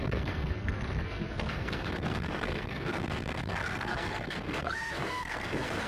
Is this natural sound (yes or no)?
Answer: no